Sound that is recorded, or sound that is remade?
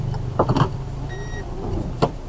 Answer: remade